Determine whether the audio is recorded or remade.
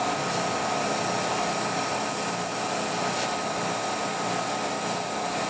recorded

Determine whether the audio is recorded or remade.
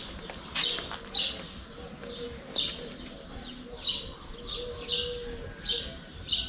recorded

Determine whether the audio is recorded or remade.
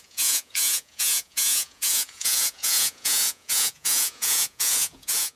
remade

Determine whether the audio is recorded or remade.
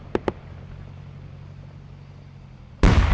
recorded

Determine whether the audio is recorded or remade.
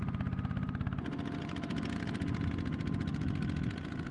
recorded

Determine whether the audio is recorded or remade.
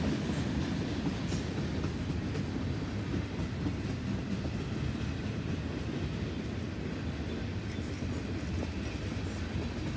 recorded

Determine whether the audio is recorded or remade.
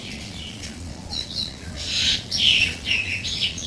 remade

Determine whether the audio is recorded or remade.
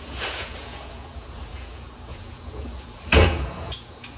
remade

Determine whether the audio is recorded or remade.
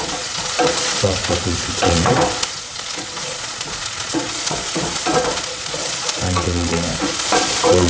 remade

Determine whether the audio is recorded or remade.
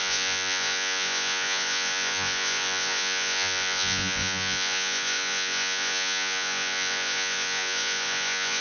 remade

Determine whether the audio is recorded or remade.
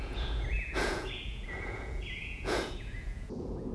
remade